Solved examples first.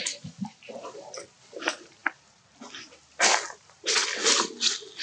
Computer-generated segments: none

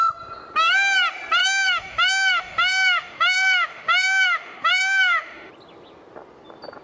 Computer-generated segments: 1.4-5.5 (autoencoder, DAC-VAE)

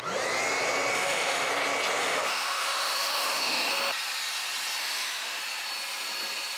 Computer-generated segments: 0.9-1.5 (autoencoder, DAC-VAE); 2.0-3.7; 4.8-5.4

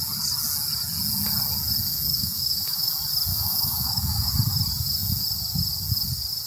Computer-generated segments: 1.9-2.9 (autoencoder, DAC-VAE); 3.3-4.3

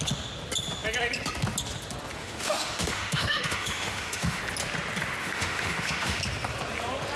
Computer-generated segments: 2.2-4.4 (autoencoder, DAC-VAE); 5.2-6.2

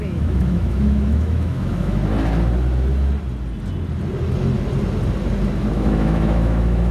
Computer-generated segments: 0.0-2.0 (autoencoder, DAC-VAE); 5.7-6.9

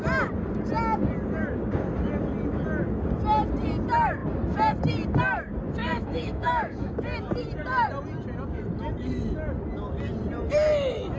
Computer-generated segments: 5.8-6.9 (autoencoder, DAC-VAE)